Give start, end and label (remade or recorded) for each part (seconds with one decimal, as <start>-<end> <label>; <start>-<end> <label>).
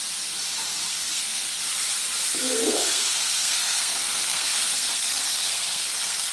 0.0-0.9 recorded; 0.9-1.5 remade; 1.5-2.3 recorded; 2.3-6.3 remade